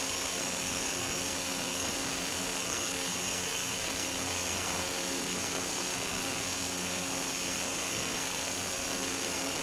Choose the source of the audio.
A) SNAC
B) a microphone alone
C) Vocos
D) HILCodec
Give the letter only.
A